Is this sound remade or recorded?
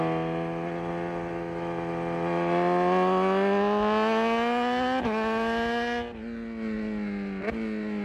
recorded